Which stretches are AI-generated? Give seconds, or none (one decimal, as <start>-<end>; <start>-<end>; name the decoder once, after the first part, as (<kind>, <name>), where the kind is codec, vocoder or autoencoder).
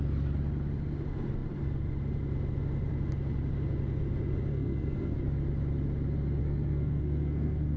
4.5-5.2 (codec, SNAC); 6.4-7.8